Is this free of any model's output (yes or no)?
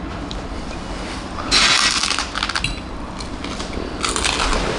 yes